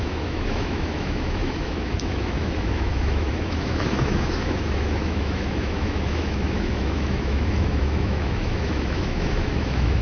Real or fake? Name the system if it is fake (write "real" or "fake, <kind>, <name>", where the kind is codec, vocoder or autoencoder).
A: fake, autoencoder, DAC-VAE